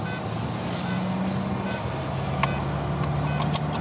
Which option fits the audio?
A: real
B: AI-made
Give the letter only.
A